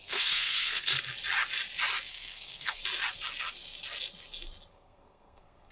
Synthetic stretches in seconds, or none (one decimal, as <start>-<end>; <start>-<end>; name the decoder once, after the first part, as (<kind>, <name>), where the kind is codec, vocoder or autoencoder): 0.0-0.9 (codec, SNAC); 2.1-2.8; 4.7-5.7